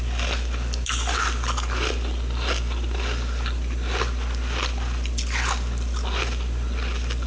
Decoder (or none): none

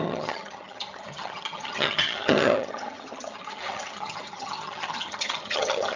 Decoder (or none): vocoder, HiFi-GAN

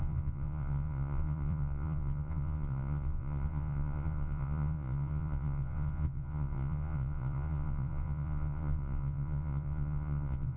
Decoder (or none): vocoder, Vocos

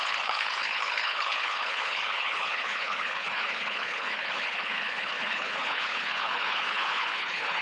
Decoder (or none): codec, HILCodec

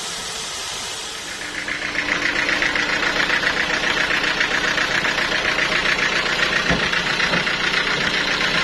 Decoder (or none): none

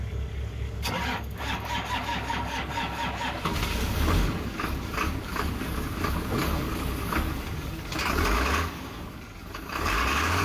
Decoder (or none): codec, DAC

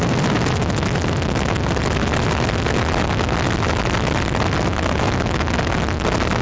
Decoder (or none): none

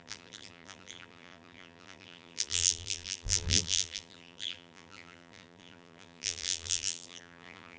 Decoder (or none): vocoder, BigVGAN v2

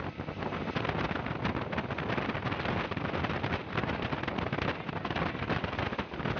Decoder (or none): none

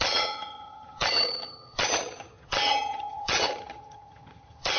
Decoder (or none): vocoder, HiFi-GAN